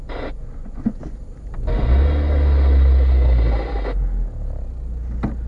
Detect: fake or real real